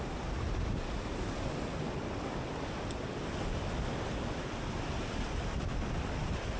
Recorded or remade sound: recorded